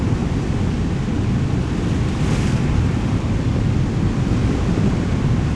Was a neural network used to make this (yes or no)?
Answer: no